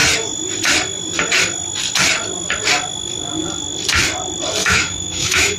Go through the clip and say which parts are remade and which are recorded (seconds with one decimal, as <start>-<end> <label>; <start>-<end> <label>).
0.0-4.6 recorded; 4.6-5.6 remade